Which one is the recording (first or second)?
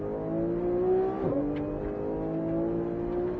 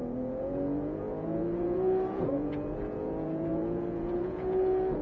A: first